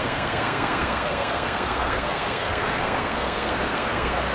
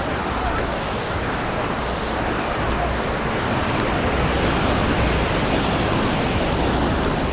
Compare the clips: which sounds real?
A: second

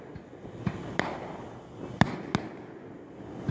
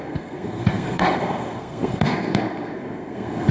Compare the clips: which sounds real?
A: first